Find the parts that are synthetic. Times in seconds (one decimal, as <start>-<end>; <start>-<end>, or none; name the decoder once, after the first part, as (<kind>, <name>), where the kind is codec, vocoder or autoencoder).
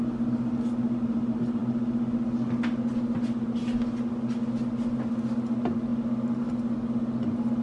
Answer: none